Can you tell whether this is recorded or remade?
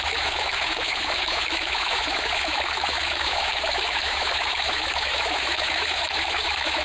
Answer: remade